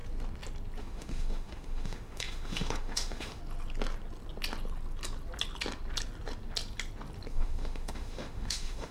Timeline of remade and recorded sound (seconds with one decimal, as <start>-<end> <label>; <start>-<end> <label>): 0.0-0.8 recorded; 0.8-3.4 remade; 3.4-7.3 recorded; 7.3-8.9 remade